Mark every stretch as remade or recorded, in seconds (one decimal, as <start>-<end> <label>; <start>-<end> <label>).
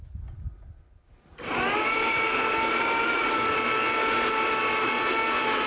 0.0-5.7 recorded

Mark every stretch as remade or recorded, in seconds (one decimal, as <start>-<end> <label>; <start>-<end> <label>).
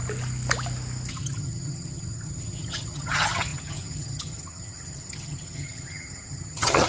0.0-1.1 recorded; 1.1-6.9 remade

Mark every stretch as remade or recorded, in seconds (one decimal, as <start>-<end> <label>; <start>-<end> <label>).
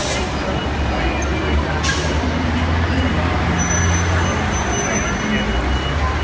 0.0-6.2 recorded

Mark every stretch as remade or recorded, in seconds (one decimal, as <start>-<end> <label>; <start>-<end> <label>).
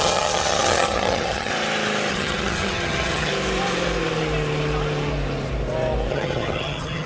0.0-1.5 remade; 1.5-2.1 recorded; 2.1-3.3 remade; 3.3-6.1 recorded; 6.1-7.1 remade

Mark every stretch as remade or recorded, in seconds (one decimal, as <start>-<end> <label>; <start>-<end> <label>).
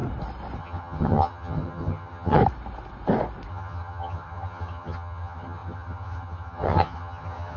0.0-0.6 recorded; 0.6-2.4 remade; 2.4-3.5 recorded; 3.5-7.6 remade